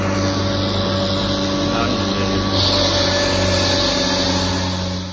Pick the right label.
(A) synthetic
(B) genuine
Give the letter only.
B